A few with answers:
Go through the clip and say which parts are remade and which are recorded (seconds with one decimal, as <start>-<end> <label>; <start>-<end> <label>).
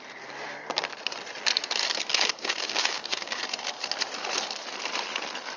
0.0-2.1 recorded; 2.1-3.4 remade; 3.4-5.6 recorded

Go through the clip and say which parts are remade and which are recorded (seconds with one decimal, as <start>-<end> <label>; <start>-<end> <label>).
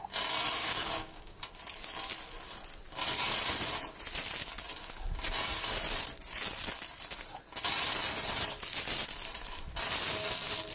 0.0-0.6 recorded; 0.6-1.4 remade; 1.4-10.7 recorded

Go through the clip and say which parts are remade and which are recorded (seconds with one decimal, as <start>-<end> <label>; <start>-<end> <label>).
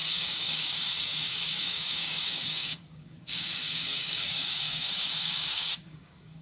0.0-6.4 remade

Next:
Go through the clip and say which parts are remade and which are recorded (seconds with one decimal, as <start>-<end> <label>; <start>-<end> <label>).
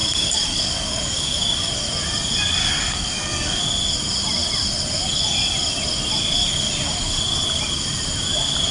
0.0-1.7 remade; 1.7-2.6 recorded; 2.6-3.6 remade; 3.6-8.7 recorded